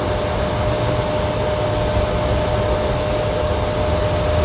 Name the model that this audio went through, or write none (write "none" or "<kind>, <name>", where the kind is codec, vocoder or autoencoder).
none